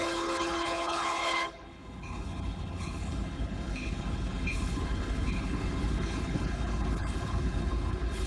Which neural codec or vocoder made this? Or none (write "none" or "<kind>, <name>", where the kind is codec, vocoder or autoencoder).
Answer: codec, HILCodec